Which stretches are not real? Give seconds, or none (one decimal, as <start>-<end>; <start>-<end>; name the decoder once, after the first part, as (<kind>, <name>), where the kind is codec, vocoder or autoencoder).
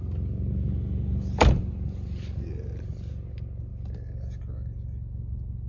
none